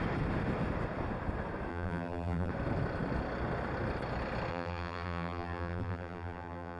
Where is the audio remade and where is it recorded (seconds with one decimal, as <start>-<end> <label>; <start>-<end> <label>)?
0.0-1.7 recorded; 1.7-2.5 remade; 2.5-4.5 recorded; 4.5-6.8 remade